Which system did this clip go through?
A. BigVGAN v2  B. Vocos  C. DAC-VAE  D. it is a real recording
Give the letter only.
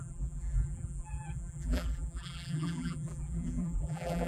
A